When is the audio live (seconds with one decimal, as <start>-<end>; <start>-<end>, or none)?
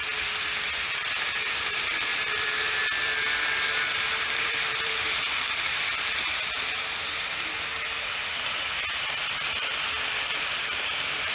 none